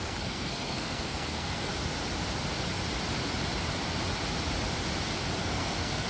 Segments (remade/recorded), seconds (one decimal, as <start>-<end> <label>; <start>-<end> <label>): 0.0-1.7 remade; 1.7-5.4 recorded; 5.4-6.1 remade